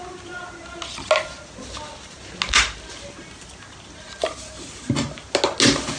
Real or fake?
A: real